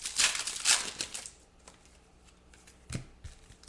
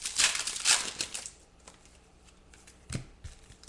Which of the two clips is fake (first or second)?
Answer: second